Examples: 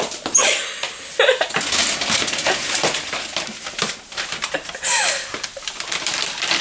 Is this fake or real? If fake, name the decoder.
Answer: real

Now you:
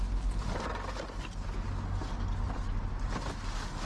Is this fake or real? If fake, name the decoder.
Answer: real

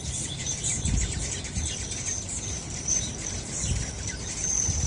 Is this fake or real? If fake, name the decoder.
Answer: fake, vocoder, BigVGAN v2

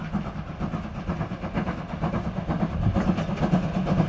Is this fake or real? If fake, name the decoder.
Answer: real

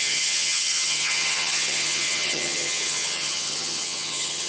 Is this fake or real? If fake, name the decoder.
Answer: fake, vocoder, HiFi-GAN